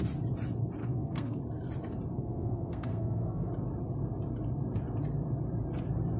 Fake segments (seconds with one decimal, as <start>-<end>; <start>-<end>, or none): 0.8-1.4; 2.1-3.5